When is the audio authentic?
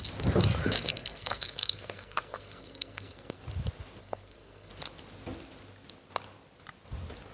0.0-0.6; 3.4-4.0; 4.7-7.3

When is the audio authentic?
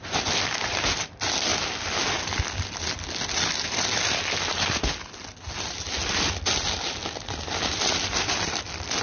1.5-6.1; 7.0-7.7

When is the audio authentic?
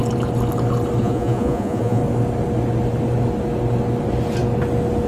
0.0-1.0; 2.0-5.1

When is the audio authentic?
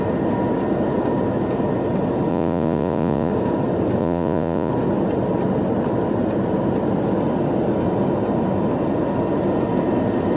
0.0-2.3; 3.3-4.0; 4.7-10.4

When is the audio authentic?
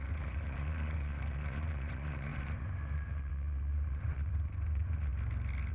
5.1-5.7